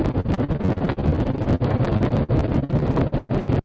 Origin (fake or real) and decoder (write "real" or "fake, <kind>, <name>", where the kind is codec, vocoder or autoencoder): real